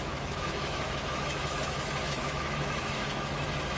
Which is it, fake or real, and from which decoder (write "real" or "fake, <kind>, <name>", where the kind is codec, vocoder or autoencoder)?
fake, autoencoder, DAC-VAE